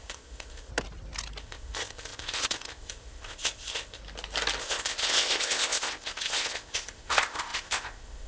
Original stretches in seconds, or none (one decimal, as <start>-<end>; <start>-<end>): 0.7-1.4; 4.0-4.6